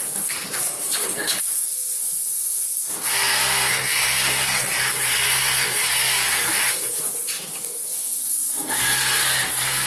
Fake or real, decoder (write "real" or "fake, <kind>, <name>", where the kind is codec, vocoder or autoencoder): fake, codec, SNAC